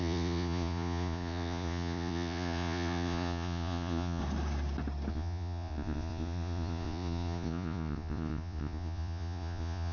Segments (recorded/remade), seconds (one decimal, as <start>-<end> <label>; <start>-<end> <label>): 0.0-4.2 remade; 4.2-5.1 recorded; 5.1-9.9 remade

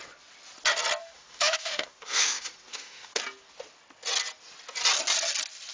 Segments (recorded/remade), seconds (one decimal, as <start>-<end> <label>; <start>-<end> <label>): 0.0-1.0 recorded; 1.0-3.2 remade; 3.2-5.7 recorded